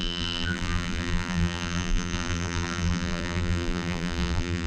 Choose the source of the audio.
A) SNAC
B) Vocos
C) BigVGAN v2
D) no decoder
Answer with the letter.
C